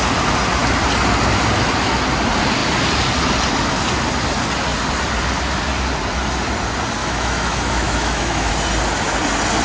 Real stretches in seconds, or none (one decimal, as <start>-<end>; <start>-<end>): 0.0-7.0; 8.5-9.6